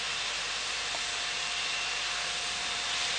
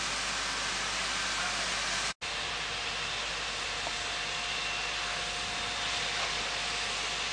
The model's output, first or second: first